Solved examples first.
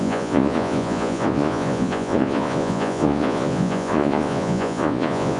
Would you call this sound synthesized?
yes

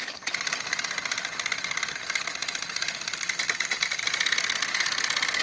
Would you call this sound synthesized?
no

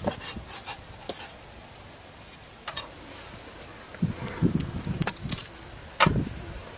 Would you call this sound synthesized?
no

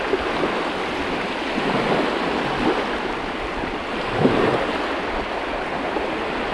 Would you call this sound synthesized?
no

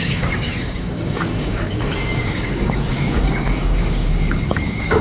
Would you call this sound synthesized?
yes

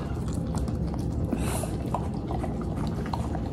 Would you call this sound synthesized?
no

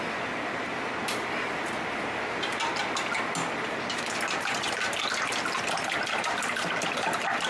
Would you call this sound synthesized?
no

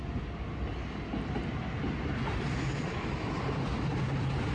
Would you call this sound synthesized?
no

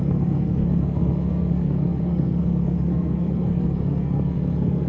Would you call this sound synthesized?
yes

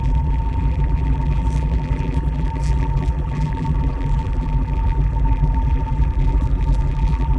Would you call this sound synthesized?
yes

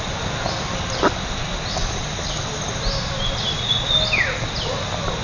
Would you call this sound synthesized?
no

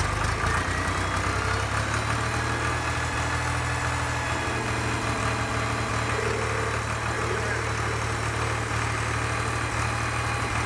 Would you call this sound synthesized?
no